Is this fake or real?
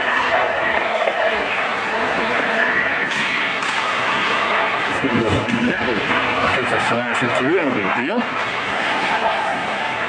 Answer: fake